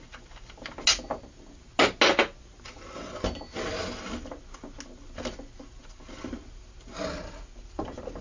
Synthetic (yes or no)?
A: no